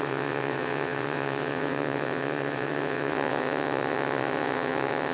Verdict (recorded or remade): remade